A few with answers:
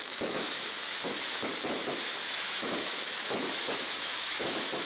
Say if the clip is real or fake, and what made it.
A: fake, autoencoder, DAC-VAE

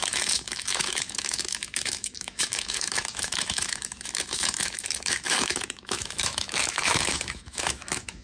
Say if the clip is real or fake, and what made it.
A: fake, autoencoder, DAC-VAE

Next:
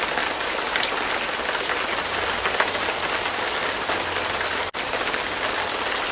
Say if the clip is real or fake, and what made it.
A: real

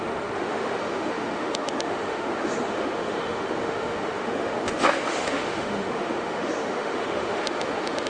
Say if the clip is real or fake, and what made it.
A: fake, autoencoder, DAC-VAE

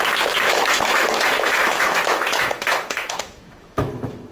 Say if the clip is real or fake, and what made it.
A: fake, autoencoder, DAC-VAE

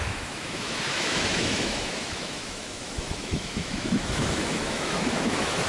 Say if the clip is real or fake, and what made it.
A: fake, autoencoder, DAC-VAE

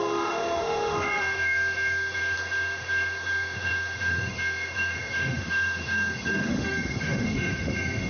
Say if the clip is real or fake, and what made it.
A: fake, autoencoder, DAC-VAE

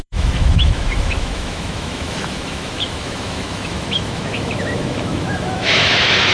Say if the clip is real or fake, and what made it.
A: fake, autoencoder, DAC-VAE